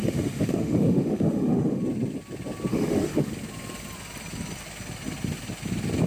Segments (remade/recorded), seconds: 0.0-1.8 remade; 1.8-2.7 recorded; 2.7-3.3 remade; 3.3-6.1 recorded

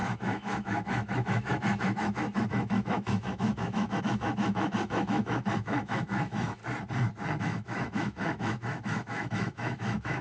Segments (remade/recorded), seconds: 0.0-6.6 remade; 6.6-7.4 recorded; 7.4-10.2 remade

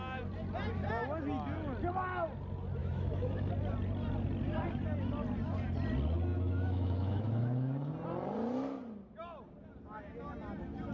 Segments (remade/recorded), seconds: 0.0-2.8 recorded; 2.8-3.5 remade; 3.5-6.3 recorded; 6.3-7.9 remade; 7.9-10.9 recorded